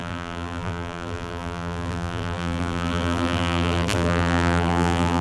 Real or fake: fake